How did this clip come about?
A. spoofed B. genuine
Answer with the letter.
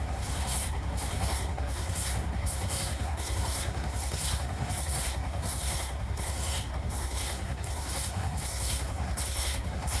A